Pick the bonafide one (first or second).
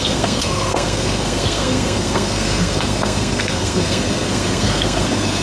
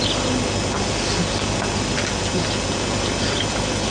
second